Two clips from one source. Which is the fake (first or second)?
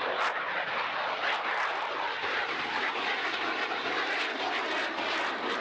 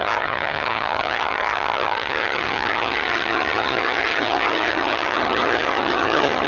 second